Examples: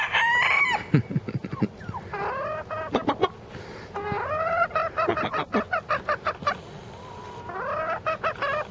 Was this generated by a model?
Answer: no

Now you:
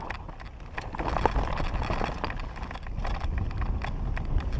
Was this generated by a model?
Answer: no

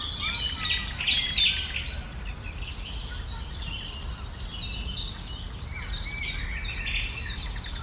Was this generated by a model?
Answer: no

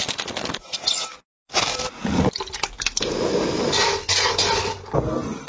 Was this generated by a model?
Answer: no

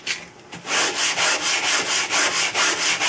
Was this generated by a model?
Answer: no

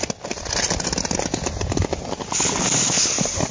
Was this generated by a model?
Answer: no